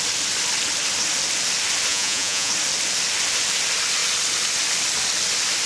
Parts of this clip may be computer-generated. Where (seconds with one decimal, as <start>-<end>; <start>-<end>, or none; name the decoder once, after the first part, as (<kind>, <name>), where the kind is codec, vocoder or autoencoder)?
1.9-2.5 (vocoder, Vocos)